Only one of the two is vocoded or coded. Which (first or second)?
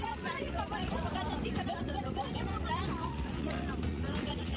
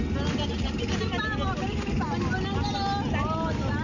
first